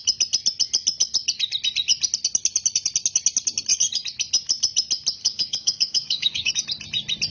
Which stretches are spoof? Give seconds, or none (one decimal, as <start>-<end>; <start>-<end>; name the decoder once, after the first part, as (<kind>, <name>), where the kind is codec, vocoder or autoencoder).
5.2-6.5 (codec, DAC)